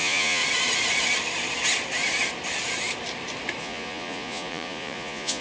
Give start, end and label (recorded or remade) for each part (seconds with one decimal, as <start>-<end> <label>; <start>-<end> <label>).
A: 0.0-0.4 remade; 0.4-3.6 recorded; 3.6-5.4 remade